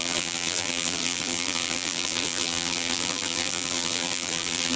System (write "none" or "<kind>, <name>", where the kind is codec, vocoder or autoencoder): vocoder, BigVGAN v2